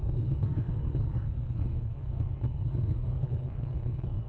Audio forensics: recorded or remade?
remade